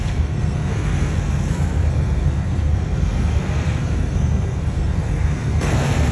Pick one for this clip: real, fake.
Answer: fake